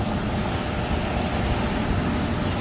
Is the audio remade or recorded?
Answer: recorded